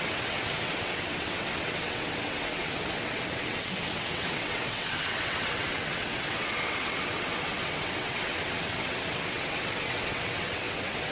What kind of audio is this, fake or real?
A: fake